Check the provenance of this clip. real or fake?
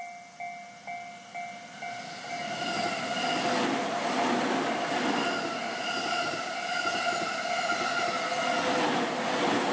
real